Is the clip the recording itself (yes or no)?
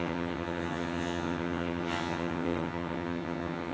no